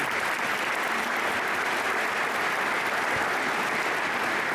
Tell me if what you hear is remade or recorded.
recorded